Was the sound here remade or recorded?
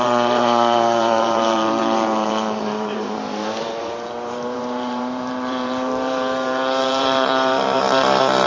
remade